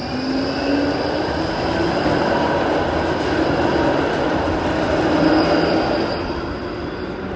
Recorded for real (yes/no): yes